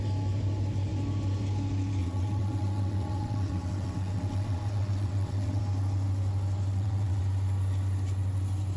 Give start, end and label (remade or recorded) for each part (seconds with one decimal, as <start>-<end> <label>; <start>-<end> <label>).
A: 0.0-2.0 recorded; 2.0-5.6 remade; 5.6-6.7 recorded; 6.7-7.2 remade; 7.2-8.8 recorded